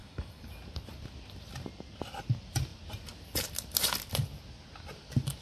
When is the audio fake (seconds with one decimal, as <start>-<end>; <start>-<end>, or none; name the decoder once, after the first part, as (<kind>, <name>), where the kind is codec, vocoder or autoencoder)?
0.0-0.5 (codec, DAC)

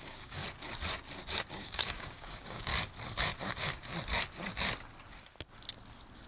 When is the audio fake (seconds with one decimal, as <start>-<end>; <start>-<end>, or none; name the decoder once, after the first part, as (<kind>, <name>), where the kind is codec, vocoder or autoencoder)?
0.0-0.4 (codec, DAC); 1.5-2.7; 3.4-3.8

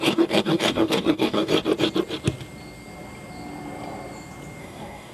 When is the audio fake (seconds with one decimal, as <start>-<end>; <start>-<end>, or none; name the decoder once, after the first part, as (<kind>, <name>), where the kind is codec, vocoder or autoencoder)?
0.0-1.5 (codec, DAC); 4.6-5.1